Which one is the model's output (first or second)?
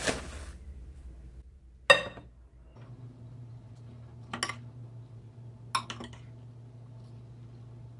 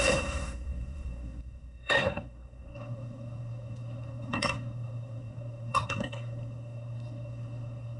second